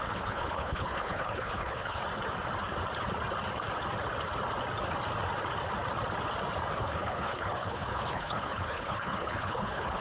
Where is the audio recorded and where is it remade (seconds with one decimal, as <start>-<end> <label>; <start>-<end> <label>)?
0.0-2.0 remade; 2.0-6.8 recorded; 6.8-10.0 remade